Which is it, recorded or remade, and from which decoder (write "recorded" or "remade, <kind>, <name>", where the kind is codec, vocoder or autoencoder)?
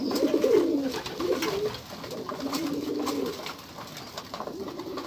recorded